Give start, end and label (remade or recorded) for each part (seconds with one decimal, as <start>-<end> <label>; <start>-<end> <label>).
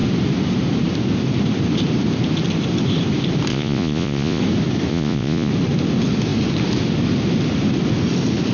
0.0-3.5 recorded; 3.5-4.4 remade; 4.4-4.9 recorded; 4.9-5.5 remade; 5.5-8.5 recorded